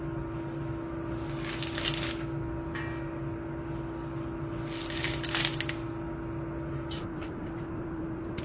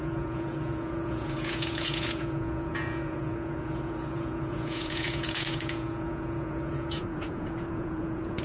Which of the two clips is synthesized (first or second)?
second